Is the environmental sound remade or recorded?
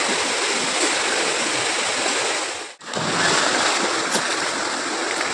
recorded